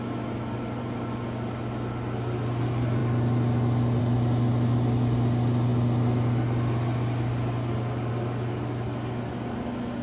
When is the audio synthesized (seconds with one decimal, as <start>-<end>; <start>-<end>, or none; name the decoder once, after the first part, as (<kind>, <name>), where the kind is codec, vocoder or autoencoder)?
none